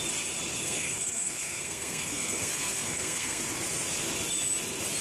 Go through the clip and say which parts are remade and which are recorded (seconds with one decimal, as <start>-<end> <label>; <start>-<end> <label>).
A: 0.0-0.6 recorded; 0.6-3.4 remade; 3.4-5.0 recorded